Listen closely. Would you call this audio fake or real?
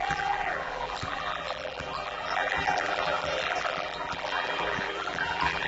fake